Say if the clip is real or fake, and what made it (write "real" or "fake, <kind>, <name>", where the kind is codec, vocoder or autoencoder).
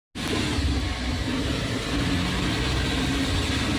real